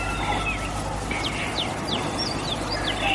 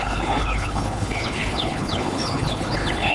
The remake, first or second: second